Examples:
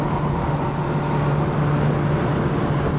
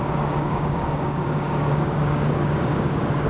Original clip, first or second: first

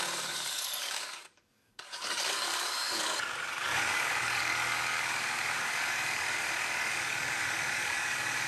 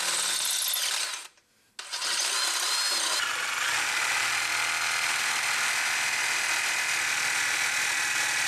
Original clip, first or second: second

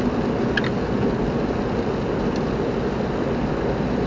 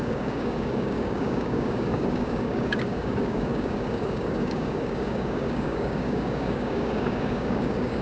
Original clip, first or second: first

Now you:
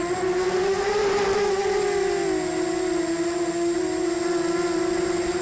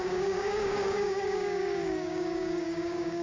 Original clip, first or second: first